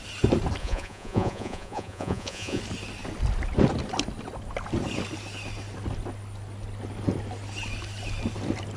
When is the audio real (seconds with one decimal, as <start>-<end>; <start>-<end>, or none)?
0.0-0.6; 2.6-8.8